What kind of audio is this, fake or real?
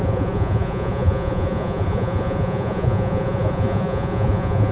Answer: fake